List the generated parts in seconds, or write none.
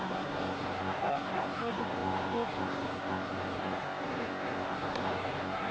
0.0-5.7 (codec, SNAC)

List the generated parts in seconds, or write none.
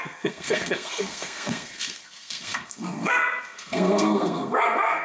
0.0-5.0 (codec, SNAC)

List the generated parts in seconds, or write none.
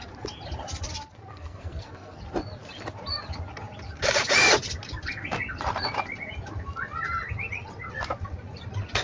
1.3-2.2 (codec, SNAC)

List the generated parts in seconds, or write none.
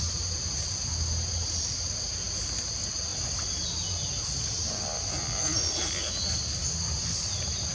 none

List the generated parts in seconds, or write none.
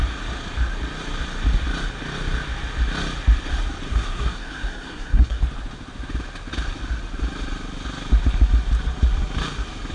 3.9-5.4 (codec, SNAC)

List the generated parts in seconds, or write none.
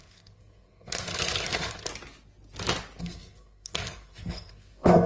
0.0-1.9 (codec, SNAC); 3.0-5.1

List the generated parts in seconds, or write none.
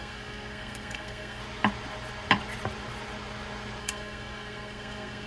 0.0-1.4 (codec, SNAC); 3.8-5.3